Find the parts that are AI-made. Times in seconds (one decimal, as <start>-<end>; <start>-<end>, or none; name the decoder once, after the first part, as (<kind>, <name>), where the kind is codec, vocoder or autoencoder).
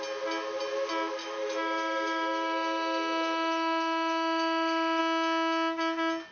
1.2-5.0 (autoencoder, DAC-VAE)